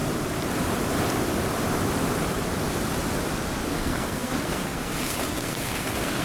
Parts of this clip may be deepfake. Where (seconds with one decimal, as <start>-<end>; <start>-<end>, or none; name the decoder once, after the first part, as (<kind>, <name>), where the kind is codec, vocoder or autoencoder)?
3.7-6.2 (codec, SNAC)